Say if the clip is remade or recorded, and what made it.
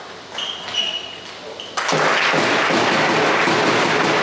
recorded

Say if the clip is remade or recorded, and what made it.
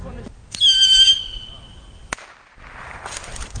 recorded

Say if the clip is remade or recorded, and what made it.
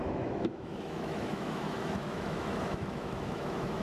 remade, autoencoder, DAC-VAE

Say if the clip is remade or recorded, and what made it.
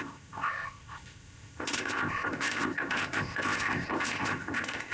remade, codec, ZipCodec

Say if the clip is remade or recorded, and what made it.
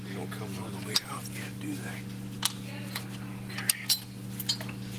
recorded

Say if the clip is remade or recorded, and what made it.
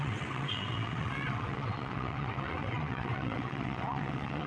remade, vocoder, WaveNeXt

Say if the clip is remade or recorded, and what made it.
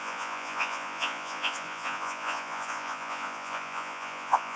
remade, vocoder, Vocos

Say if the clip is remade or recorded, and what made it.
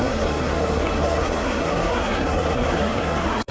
remade, codec, SNAC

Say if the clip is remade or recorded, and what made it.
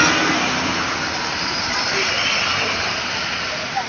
recorded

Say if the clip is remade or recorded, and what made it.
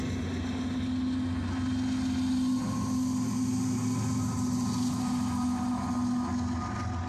recorded